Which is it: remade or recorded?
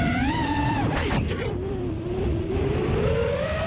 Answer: remade